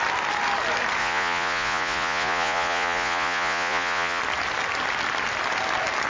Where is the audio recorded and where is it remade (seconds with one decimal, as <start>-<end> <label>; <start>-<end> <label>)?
0.0-1.0 recorded; 1.0-4.2 remade; 4.2-6.1 recorded